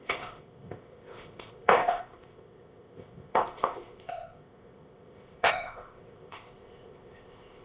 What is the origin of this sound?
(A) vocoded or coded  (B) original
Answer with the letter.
A